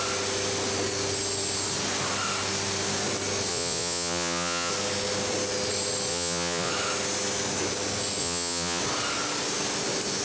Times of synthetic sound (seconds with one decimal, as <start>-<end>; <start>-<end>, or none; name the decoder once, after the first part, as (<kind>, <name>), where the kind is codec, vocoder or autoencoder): 3.5-4.7 (vocoder, Vocos); 6.1-6.7; 8.2-8.8